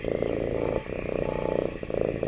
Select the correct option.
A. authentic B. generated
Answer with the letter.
A